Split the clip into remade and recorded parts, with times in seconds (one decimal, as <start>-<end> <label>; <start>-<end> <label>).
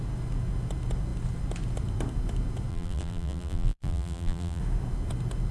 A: 0.0-2.7 recorded; 2.7-4.6 remade; 4.6-5.5 recorded